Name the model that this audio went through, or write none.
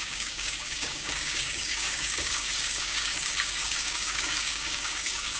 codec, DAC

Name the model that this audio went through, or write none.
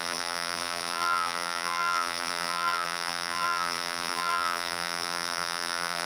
vocoder, BigVGAN v2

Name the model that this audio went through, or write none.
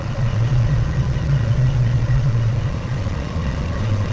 vocoder, Vocos